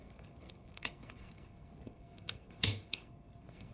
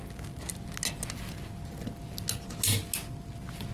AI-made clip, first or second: first